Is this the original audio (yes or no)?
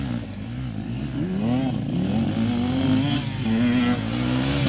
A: yes